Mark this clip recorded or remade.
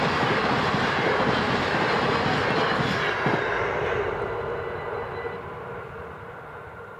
recorded